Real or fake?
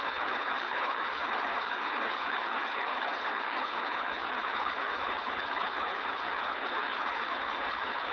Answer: fake